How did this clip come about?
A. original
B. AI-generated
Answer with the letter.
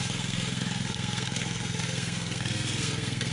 B